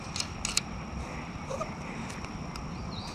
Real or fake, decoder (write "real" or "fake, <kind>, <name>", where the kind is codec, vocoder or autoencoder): real